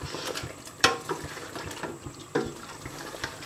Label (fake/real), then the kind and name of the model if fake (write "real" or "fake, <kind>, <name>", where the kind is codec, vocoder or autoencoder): fake, vocoder, BigVGAN v2